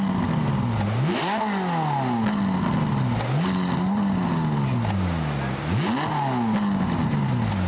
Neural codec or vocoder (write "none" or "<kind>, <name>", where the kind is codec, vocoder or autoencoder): none